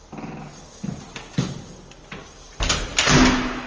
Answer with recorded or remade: recorded